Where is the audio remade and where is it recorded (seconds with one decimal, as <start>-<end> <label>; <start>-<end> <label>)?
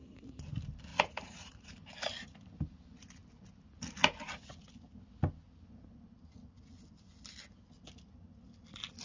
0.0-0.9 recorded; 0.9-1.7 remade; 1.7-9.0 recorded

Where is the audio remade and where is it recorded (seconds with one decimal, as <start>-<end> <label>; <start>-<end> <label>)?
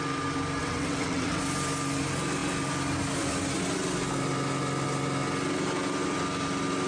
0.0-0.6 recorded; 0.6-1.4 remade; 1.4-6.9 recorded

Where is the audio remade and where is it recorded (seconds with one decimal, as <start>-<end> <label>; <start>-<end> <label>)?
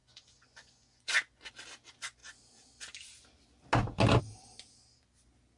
0.0-1.5 remade; 1.5-5.6 recorded